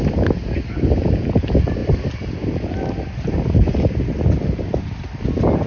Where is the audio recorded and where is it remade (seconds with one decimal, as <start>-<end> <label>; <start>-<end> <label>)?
0.0-5.7 recorded